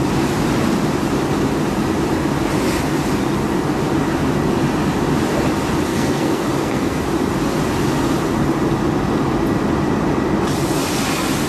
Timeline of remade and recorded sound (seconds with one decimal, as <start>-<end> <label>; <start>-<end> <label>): 0.0-5.9 recorded; 5.9-7.0 remade; 7.0-11.5 recorded